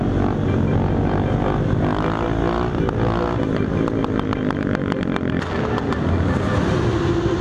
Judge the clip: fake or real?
real